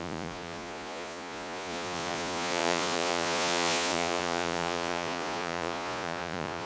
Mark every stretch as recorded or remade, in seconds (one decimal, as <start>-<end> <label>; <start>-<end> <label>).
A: 0.0-6.7 remade